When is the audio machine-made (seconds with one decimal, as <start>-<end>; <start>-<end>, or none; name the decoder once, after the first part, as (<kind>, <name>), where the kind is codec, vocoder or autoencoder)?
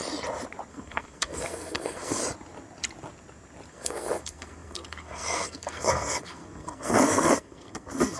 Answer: 0.7-2.2 (codec, SNAC); 3.7-8.2